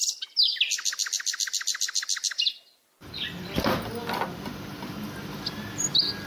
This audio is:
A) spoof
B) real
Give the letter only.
B